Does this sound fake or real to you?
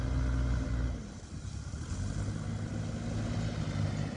real